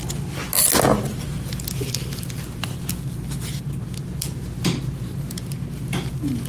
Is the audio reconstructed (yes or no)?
no